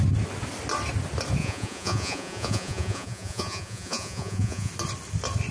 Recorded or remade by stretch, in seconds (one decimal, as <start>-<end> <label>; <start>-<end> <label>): 0.0-1.4 recorded; 1.4-4.7 remade; 4.7-5.5 recorded